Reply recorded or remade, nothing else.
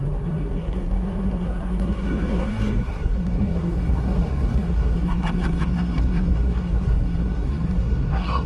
remade